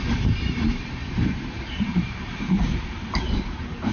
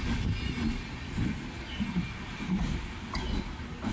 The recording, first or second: second